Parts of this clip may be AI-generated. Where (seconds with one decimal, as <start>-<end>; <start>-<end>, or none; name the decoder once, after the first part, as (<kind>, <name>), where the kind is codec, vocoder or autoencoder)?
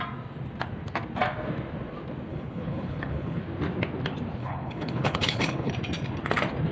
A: 2.3-3.4 (codec, HILCodec); 4.4-5.7